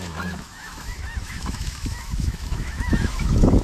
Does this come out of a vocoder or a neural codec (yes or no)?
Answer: yes